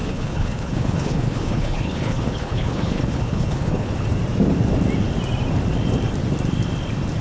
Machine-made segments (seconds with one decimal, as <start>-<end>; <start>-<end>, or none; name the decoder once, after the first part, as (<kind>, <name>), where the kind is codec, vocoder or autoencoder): 0.0-3.9 (codec, HILCodec)